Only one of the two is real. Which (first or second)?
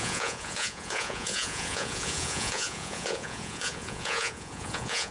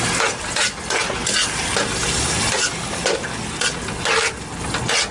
second